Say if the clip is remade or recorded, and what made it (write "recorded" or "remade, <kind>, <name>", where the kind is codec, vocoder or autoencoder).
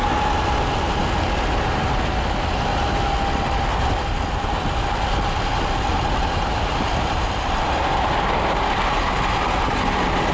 recorded